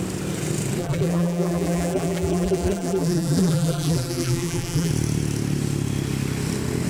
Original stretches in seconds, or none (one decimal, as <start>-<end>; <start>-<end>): 0.0-0.8; 4.9-6.9